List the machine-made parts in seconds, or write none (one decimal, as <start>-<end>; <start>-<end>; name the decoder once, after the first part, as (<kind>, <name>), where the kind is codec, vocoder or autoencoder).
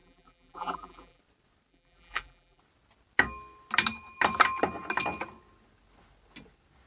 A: 0.0-1.2 (vocoder, BigVGAN v2); 1.7-2.6